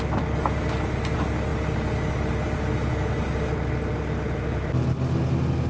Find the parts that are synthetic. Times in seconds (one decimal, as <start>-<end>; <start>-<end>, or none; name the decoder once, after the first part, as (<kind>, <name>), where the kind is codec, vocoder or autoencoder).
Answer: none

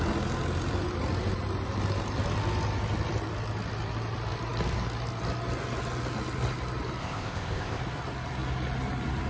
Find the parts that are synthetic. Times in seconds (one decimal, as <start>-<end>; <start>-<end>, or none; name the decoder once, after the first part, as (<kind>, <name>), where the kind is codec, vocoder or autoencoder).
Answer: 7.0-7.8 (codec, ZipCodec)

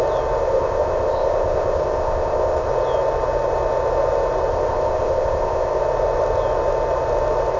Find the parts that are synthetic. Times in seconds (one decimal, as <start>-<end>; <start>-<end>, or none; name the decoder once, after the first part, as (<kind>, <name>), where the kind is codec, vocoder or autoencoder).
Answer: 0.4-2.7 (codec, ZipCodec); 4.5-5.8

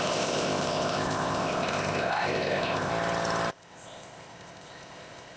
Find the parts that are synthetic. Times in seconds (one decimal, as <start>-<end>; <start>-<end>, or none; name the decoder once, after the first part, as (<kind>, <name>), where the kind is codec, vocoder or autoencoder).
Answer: 0.0-2.9 (codec, ZipCodec); 3.5-5.4

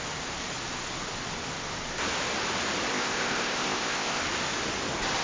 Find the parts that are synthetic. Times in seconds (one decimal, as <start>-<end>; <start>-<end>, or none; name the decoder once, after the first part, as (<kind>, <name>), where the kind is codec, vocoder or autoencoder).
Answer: 2.9-4.2 (codec, ZipCodec)

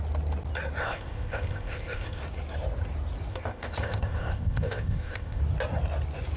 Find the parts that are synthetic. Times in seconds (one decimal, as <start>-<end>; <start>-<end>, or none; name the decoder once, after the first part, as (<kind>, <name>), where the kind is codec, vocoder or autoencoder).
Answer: 0.8-2.2 (codec, ZipCodec); 3.3-5.4

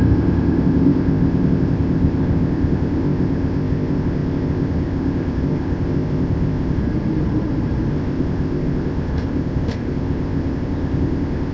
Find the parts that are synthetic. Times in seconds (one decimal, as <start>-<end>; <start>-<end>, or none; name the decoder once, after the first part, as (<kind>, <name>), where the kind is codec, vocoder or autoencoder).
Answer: 0.0-6.8 (codec, ZipCodec); 7.9-11.5

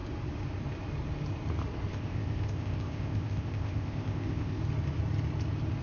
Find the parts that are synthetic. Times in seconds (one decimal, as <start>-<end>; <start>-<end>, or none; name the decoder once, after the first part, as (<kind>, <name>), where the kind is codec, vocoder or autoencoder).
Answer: 1.9-4.6 (codec, ZipCodec)